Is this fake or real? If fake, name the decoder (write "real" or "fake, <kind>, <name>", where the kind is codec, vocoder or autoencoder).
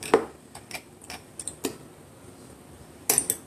real